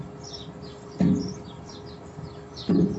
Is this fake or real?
real